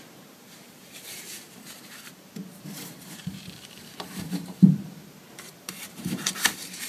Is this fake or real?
fake